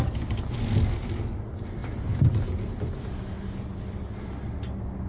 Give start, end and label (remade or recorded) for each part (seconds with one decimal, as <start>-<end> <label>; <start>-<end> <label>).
0.0-5.1 recorded